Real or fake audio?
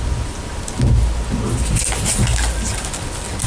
real